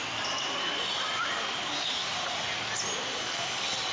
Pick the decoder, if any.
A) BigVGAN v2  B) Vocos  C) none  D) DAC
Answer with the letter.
C